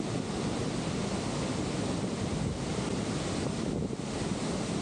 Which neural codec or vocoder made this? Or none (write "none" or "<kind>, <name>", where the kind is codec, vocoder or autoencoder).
none